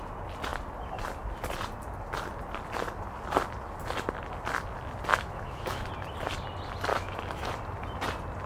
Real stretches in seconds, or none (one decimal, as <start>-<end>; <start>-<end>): 0.0-5.1; 5.9-6.9; 7.5-8.5